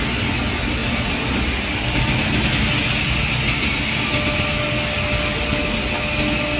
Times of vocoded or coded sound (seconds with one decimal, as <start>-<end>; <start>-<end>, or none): none